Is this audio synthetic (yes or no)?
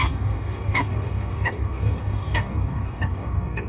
yes